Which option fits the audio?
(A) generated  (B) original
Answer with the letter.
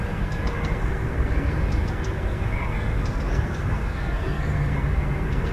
A